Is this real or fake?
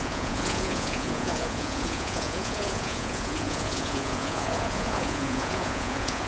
fake